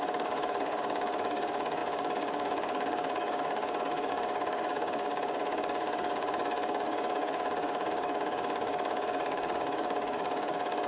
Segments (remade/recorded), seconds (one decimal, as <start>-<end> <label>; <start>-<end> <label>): 0.0-10.9 remade